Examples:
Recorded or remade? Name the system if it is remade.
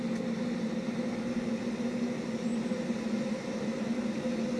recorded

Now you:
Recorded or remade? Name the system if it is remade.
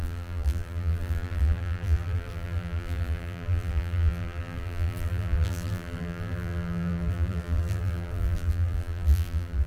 remade, vocoder, BigVGAN v2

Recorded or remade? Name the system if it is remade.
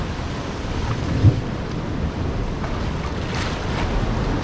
recorded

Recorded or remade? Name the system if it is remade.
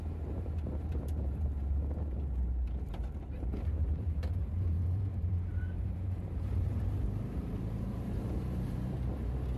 remade, vocoder, BigVGAN v2